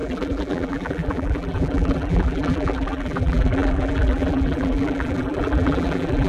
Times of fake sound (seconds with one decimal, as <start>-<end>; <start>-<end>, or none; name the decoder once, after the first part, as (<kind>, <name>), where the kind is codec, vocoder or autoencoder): 0.0-6.3 (vocoder, BigVGAN v2)